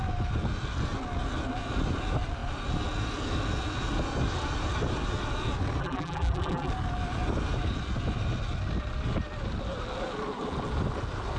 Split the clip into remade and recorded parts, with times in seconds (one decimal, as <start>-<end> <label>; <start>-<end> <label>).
0.0-5.8 recorded; 5.8-6.7 remade; 6.7-11.4 recorded